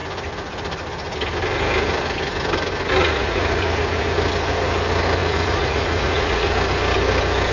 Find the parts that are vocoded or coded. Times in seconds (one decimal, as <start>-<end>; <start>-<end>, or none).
3.0-4.0; 5.2-6.5